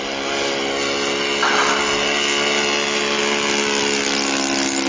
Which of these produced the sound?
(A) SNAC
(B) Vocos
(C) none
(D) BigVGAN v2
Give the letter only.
C